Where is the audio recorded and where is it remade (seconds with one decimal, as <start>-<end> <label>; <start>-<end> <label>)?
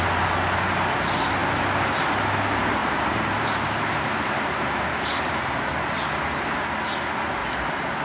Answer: 0.0-2.8 recorded; 2.8-5.7 remade; 5.7-7.4 recorded; 7.4-8.0 remade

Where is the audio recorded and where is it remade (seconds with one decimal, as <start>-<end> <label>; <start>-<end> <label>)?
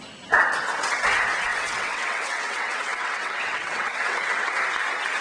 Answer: 0.0-1.5 recorded; 1.5-4.6 remade; 4.6-5.2 recorded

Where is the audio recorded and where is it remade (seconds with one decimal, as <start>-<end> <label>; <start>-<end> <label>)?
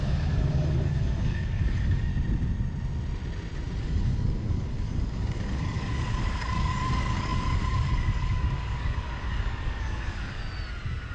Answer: 0.0-2.1 remade; 2.1-3.8 recorded; 3.8-10.4 remade; 10.4-11.1 recorded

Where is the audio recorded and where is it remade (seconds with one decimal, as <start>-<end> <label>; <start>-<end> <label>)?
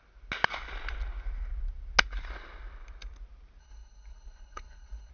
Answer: 0.0-3.6 recorded; 3.6-5.1 remade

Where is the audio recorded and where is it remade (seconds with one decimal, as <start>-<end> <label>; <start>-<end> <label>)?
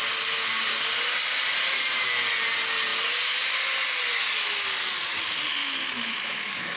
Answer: 0.0-5.6 recorded; 5.6-6.8 remade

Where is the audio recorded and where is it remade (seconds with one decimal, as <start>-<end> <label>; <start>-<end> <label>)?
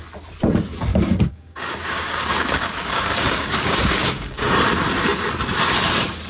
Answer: 0.0-0.9 recorded; 0.9-4.6 remade; 4.6-6.3 recorded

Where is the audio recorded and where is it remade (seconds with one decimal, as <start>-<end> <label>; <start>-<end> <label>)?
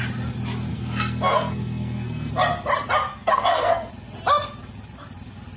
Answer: 0.0-0.7 recorded; 0.7-2.3 remade; 2.3-3.1 recorded; 3.1-3.9 remade; 3.9-5.6 recorded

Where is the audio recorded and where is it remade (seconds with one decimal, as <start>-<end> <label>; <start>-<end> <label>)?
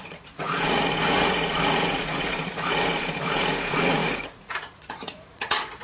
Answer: 0.0-5.8 remade